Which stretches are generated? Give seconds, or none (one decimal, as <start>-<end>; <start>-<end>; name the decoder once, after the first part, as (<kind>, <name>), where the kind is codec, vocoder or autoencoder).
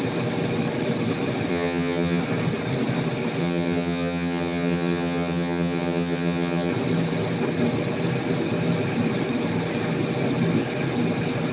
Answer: 1.5-2.2 (vocoder, HiFi-GAN); 3.4-6.7